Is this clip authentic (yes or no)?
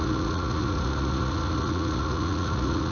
no